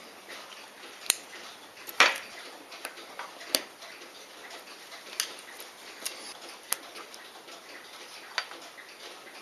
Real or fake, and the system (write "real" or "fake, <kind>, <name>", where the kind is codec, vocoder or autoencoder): real